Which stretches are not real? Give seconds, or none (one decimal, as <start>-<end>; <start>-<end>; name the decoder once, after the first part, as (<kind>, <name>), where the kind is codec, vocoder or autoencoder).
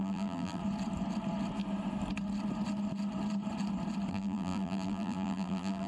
0.0-0.6 (vocoder, BigVGAN v2); 4.1-5.9